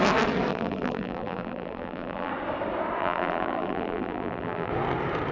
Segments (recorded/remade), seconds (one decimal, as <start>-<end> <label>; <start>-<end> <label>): 0.0-0.5 recorded; 0.5-2.3 remade; 2.3-3.0 recorded; 3.0-4.7 remade; 4.7-5.3 recorded